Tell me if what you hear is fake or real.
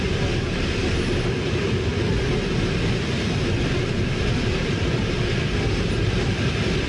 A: real